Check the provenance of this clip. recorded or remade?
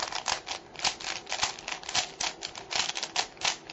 recorded